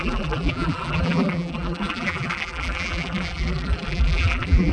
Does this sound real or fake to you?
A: fake